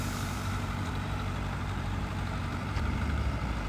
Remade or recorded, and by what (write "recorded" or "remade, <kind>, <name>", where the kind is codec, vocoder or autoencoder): remade, vocoder, BigVGAN v2